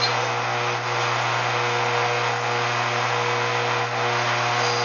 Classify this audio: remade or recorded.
recorded